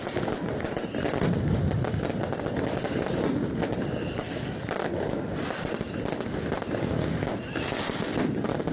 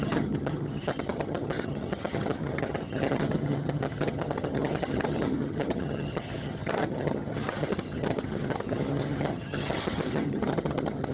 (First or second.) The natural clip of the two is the first